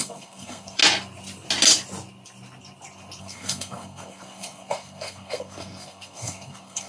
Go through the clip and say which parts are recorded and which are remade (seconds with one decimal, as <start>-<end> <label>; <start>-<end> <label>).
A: 0.0-0.8 remade; 0.8-3.2 recorded; 3.2-6.9 remade